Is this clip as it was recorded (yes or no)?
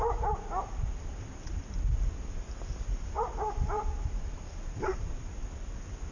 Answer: yes